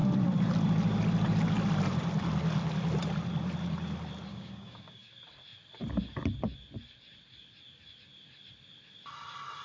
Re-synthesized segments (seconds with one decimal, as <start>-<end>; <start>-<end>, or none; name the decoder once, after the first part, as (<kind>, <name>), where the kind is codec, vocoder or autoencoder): 4.3-5.1 (codec, DAC)